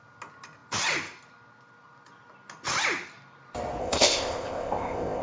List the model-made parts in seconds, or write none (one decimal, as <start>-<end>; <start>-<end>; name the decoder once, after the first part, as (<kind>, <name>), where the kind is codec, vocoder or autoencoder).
3.8-5.2 (codec, ZipCodec)